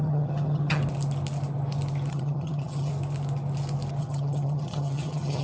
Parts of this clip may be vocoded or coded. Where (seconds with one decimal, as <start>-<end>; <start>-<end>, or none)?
0.0-0.8; 2.1-2.9; 4.0-5.4